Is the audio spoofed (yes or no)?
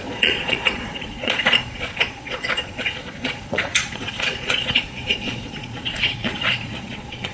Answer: yes